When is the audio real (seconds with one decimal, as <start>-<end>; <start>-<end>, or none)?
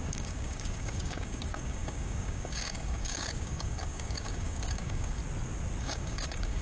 5.2-5.8